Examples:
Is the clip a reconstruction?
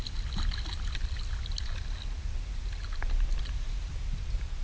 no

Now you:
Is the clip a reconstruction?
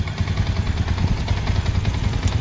no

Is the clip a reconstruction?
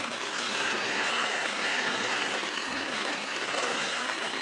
yes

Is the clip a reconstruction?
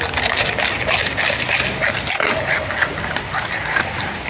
no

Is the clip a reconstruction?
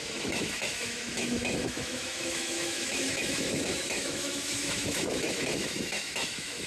yes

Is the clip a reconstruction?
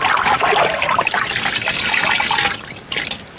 no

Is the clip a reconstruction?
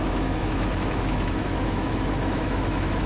yes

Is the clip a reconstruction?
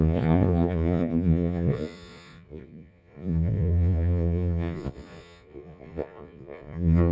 yes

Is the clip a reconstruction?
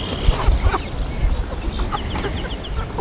no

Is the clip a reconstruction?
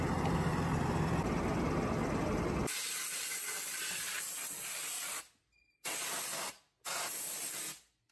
no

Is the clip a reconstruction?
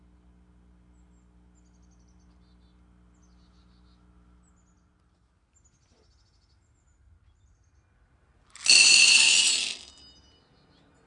no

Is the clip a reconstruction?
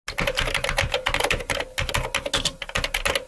no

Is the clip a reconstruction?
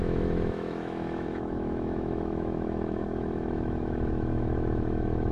yes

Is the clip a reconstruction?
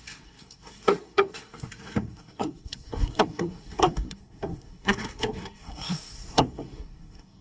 yes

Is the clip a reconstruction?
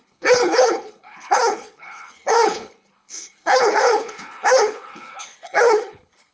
yes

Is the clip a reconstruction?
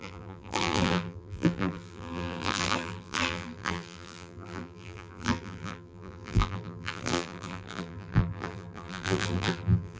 yes